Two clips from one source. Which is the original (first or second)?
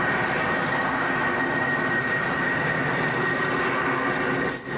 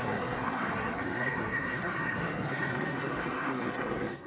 first